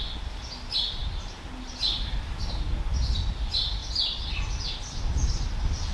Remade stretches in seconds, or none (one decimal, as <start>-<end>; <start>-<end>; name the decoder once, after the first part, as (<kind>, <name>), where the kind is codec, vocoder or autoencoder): none

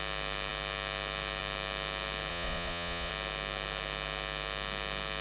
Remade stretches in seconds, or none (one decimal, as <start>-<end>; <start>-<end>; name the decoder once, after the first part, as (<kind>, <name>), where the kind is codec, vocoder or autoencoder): 2.3-3.1 (vocoder, Vocos)

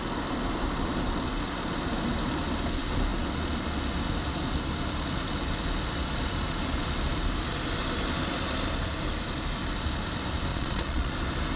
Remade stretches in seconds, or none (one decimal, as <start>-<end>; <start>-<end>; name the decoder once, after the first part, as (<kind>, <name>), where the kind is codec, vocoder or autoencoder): 10.5-11.1 (vocoder, Vocos)

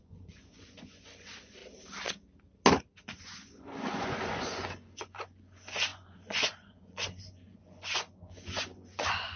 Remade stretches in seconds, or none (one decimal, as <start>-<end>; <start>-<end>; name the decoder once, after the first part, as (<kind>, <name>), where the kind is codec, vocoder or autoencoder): 0.0-1.6 (vocoder, Vocos); 2.8-9.4